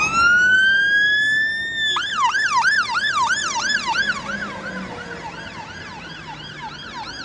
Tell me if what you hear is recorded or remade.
recorded